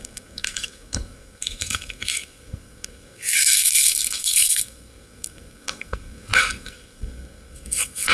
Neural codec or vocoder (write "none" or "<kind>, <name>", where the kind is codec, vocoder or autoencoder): codec, SNAC